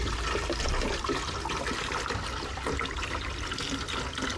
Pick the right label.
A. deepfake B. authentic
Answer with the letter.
B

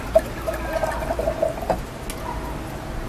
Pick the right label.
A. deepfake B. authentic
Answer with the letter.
B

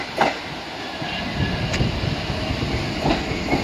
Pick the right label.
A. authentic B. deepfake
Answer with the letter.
A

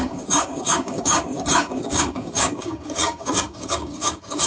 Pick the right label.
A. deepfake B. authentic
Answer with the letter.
A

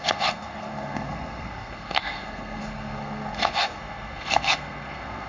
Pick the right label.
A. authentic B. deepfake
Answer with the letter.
B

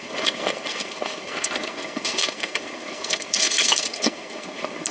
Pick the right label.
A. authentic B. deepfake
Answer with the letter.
B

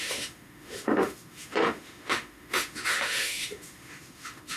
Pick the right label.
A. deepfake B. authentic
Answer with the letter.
A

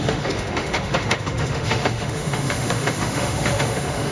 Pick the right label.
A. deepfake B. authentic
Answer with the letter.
A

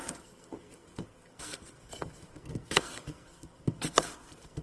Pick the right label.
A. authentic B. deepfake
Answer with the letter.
B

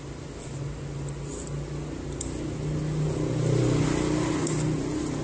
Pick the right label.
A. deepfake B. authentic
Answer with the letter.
B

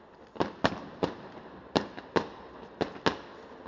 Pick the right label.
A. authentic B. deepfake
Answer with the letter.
A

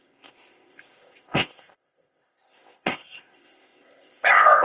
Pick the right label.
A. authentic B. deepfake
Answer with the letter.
B